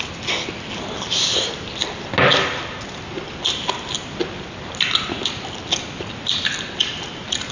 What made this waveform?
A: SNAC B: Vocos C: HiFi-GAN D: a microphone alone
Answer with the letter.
D